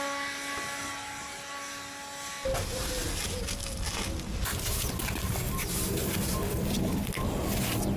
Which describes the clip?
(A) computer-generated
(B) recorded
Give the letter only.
B